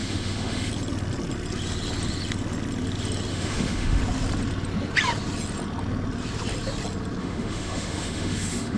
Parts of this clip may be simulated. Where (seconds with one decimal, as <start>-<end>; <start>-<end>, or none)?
0.0-0.7; 3.3-4.0; 7.2-8.8